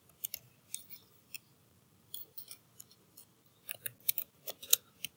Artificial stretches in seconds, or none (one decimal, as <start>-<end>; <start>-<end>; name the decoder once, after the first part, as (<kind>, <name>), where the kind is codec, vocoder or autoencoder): none